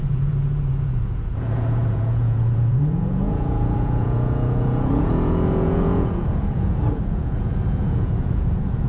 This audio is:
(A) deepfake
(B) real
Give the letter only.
A